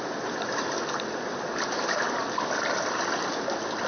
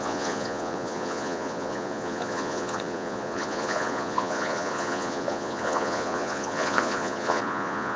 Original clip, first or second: first